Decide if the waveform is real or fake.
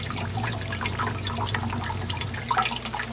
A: real